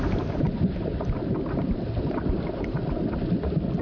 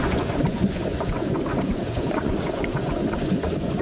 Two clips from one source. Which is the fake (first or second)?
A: second